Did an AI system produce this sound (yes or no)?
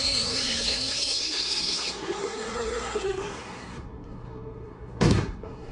yes